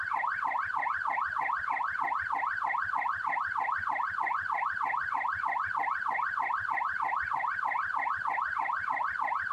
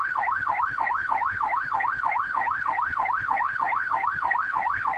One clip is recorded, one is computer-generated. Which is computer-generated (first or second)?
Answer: second